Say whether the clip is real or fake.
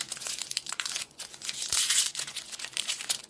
fake